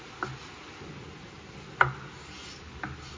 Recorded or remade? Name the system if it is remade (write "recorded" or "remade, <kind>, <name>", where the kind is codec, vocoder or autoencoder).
recorded